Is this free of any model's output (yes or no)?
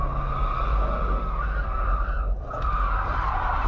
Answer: yes